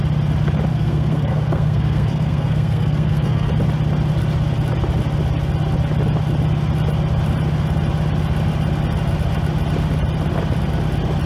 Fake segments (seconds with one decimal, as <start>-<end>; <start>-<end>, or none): 0.7-3.5